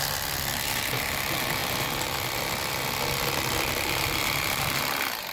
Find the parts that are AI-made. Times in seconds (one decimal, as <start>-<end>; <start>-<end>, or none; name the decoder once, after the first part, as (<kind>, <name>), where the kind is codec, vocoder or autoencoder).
none